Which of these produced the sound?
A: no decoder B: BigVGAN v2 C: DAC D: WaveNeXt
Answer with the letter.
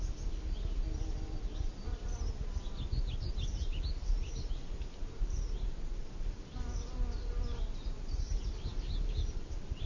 A